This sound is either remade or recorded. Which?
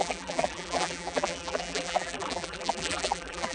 remade